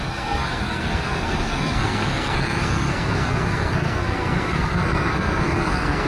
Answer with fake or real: fake